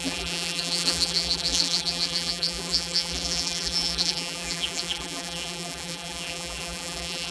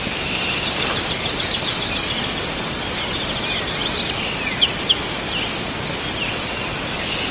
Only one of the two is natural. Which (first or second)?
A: second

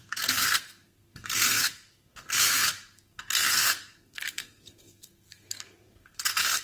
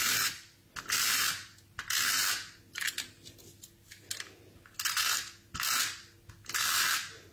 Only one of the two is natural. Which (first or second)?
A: second